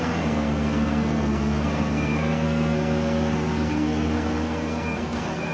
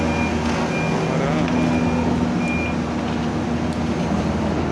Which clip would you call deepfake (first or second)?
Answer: first